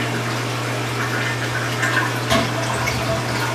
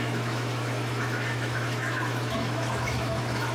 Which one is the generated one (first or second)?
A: second